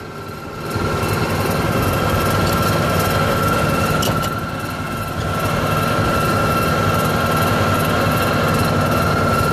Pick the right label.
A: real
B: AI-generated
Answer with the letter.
A